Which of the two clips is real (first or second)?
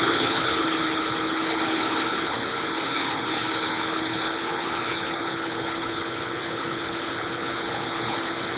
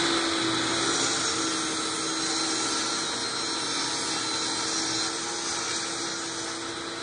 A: second